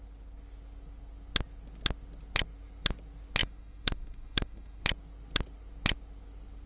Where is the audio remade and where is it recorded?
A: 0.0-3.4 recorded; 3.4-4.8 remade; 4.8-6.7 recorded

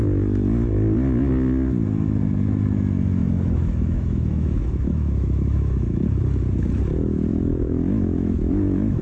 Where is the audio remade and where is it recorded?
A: 0.0-3.2 recorded; 3.2-6.0 remade; 6.0-7.3 recorded; 7.3-9.0 remade

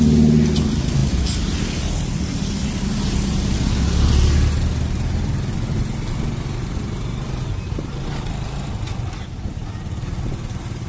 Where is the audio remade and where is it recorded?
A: 0.0-10.9 recorded